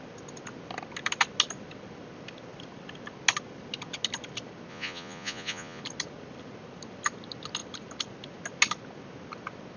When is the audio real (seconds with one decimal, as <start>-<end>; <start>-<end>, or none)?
0.0-4.7; 5.8-9.8